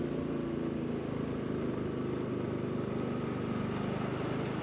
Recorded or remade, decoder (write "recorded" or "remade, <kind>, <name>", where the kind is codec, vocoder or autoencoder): recorded